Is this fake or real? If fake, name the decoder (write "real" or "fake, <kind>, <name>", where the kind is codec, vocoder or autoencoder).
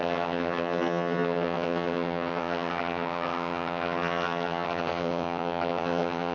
fake, vocoder, HiFi-GAN